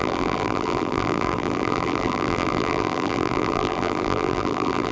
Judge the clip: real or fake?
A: fake